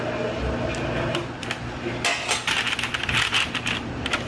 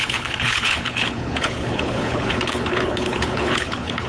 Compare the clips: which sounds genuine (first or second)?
first